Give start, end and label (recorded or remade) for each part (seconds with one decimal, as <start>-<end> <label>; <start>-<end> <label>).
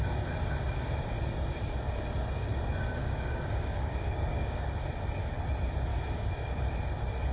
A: 0.0-3.0 recorded; 3.0-4.7 remade; 4.7-5.9 recorded; 5.9-6.6 remade; 6.6-7.3 recorded